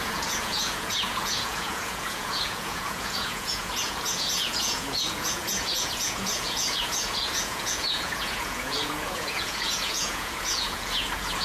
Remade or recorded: remade